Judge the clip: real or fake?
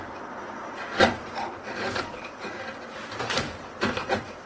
fake